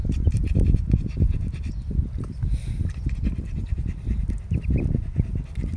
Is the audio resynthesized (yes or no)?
no